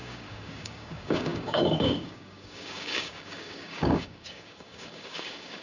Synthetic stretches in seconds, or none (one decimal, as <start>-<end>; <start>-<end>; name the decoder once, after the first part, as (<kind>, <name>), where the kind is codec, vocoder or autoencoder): 0.0-5.6 (codec, DAC)